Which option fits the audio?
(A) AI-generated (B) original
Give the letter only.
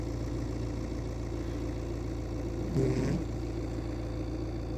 B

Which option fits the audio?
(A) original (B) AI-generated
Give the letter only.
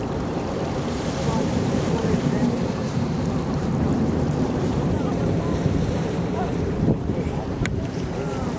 B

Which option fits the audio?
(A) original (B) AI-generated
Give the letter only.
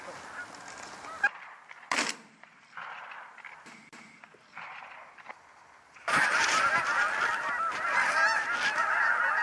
A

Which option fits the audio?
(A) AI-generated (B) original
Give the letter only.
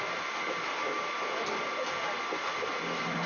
B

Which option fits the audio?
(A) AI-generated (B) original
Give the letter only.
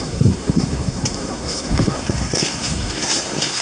A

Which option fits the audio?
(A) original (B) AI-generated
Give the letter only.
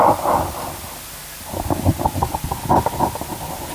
A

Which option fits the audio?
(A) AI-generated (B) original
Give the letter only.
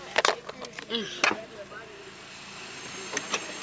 B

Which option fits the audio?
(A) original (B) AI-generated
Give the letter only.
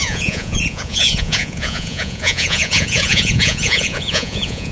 B